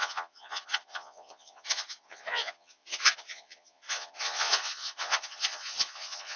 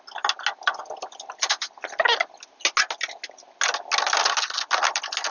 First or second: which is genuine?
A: second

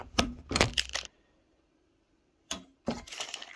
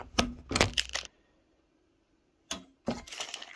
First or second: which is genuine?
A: second